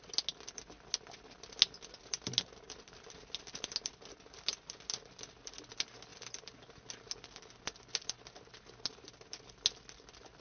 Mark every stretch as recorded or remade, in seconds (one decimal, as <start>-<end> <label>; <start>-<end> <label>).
0.0-10.4 recorded